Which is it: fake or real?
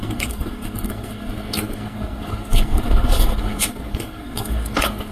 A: fake